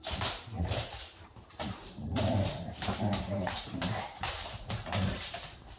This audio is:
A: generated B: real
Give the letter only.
A